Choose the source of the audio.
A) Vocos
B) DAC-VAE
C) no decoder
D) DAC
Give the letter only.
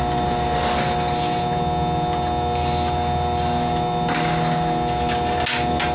C